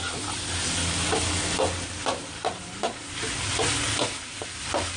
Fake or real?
real